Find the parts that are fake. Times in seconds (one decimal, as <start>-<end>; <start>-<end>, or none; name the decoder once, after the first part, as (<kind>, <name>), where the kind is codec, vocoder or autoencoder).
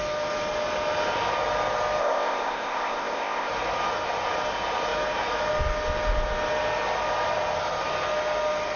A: 2.0-3.5 (codec, ZipCodec)